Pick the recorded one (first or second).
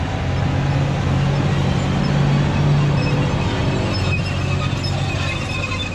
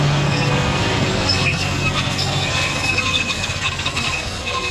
first